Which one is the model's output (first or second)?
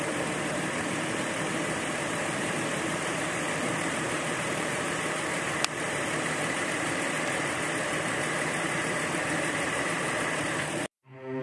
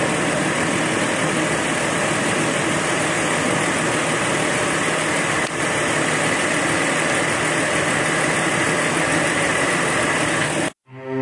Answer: first